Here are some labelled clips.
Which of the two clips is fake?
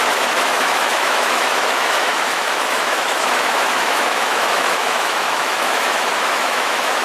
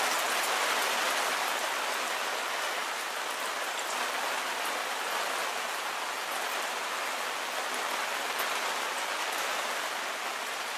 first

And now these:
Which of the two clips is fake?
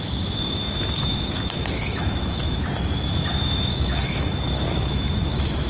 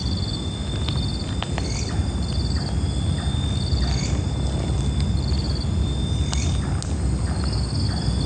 first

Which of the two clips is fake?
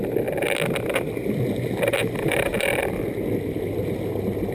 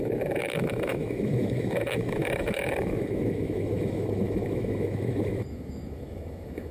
second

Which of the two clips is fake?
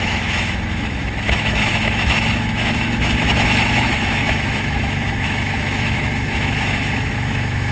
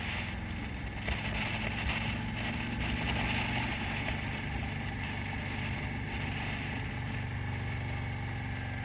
first